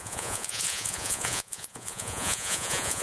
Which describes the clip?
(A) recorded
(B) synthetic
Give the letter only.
B